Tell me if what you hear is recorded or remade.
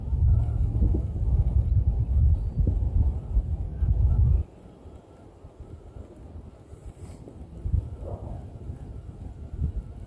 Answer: recorded